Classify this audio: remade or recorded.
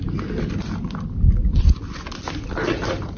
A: recorded